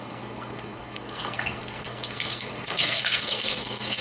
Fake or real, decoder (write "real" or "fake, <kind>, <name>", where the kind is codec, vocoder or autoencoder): fake, codec, SNAC